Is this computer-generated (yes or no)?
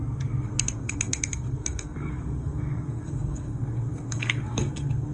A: yes